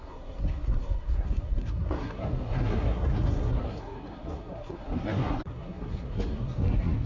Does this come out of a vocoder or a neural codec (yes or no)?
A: yes